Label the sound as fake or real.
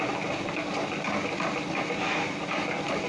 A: real